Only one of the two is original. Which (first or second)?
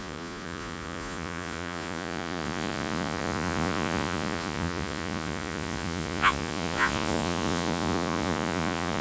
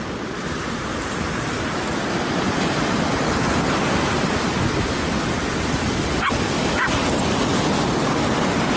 second